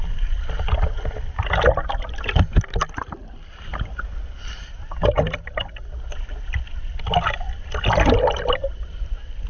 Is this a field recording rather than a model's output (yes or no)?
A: yes